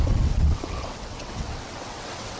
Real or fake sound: fake